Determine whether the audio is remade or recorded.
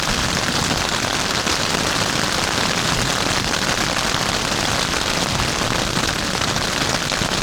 recorded